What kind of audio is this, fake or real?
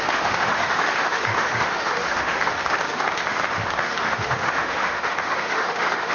fake